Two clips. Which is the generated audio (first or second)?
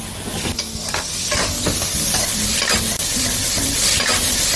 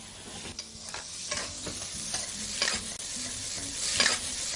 first